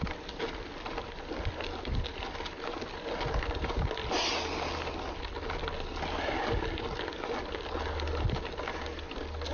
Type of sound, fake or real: real